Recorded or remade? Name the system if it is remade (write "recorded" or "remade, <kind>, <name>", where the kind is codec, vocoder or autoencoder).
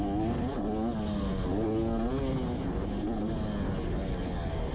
recorded